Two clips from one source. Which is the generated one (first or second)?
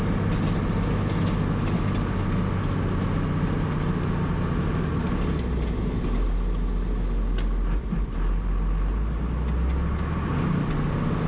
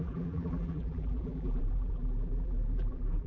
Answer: second